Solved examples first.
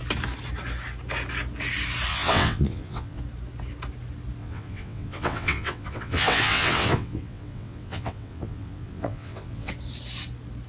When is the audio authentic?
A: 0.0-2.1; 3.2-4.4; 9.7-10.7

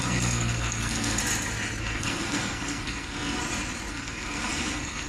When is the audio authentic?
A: 1.2-1.8; 3.4-3.9

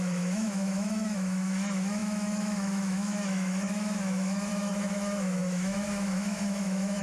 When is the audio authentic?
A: none

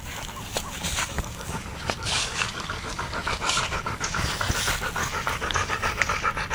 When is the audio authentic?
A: 0.0-0.5; 4.3-5.0; 6.0-6.5

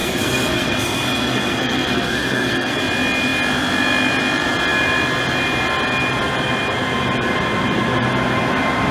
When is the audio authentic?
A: 2.8-8.9

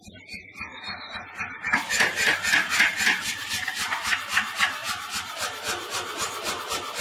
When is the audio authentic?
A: 0.0-0.7; 1.3-7.0

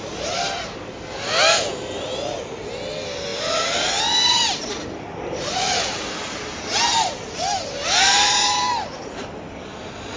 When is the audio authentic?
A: 0.0-10.2